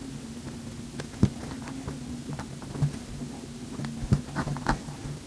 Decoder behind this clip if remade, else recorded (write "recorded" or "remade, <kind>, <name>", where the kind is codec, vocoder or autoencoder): recorded